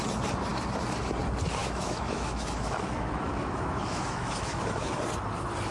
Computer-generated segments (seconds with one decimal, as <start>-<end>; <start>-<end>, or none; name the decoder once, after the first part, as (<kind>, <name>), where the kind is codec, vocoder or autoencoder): 1.6-5.0 (autoencoder, DAC-VAE)

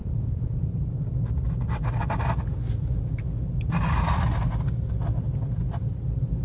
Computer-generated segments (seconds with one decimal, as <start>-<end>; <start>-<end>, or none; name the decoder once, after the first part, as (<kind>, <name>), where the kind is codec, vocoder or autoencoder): 0.0-0.7 (vocoder, Vocos)

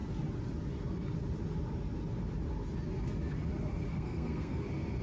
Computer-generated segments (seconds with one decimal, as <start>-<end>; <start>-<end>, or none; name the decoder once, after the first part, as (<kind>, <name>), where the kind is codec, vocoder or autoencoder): 3.9-4.6 (codec, SNAC)

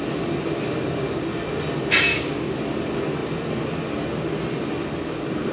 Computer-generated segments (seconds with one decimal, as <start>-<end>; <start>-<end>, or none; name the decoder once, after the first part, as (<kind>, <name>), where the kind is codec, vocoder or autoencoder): 2.1-2.6 (codec, DAC)

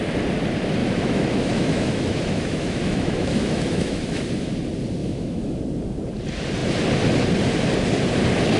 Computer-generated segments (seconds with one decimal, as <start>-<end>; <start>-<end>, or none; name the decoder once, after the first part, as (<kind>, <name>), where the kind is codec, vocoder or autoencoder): 0.8-4.6 (autoencoder, DAC-VAE); 5.0-5.6